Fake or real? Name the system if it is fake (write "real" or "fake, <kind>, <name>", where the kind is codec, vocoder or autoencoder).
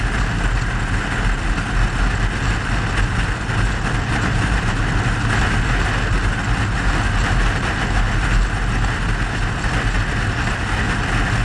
real